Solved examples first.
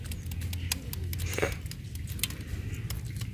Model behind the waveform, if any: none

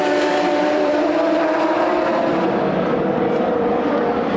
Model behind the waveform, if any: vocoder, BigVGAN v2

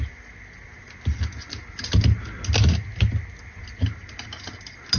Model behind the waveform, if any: none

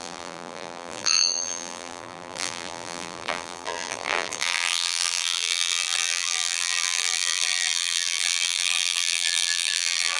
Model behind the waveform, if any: vocoder, BigVGAN v2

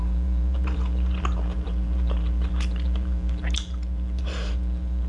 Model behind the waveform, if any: vocoder, BigVGAN v2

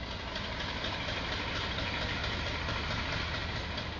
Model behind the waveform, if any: none